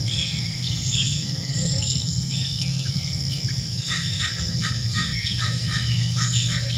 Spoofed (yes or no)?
yes